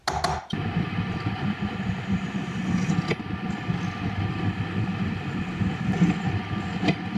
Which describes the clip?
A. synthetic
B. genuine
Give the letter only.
B